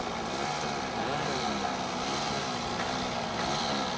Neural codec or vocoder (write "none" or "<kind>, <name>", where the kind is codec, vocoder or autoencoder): none